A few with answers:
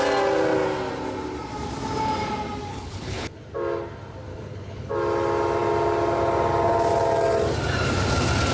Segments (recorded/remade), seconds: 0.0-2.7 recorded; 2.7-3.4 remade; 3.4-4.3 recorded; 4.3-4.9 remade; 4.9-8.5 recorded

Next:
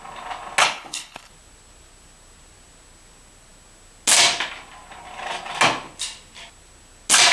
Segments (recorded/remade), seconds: 0.0-0.6 recorded; 0.6-1.3 remade; 1.3-7.3 recorded